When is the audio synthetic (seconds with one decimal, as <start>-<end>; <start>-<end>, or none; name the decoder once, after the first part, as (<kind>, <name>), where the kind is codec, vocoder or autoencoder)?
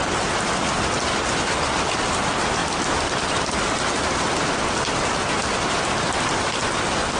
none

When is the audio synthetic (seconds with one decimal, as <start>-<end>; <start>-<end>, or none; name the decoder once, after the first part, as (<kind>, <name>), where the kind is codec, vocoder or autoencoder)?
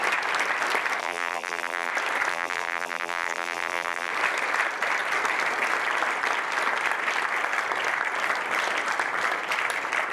1.0-1.9 (vocoder, BigVGAN v2); 2.3-4.1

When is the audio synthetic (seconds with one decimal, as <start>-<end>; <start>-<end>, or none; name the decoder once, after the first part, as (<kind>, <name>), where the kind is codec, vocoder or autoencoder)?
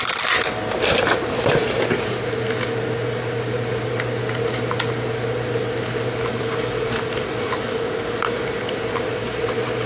none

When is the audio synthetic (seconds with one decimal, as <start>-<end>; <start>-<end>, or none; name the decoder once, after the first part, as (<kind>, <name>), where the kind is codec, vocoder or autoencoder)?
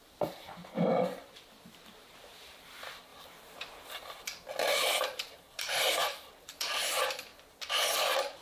0.0-0.6 (vocoder, BigVGAN v2); 1.6-7.3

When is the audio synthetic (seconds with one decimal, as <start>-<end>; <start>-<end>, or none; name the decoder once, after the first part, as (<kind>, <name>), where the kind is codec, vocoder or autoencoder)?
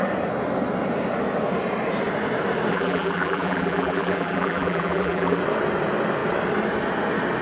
2.7-5.4 (vocoder, BigVGAN v2)